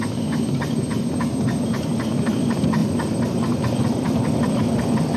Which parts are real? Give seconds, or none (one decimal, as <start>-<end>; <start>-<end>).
0.0-5.2